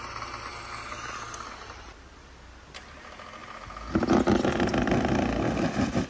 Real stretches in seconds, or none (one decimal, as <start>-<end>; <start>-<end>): 0.0-6.1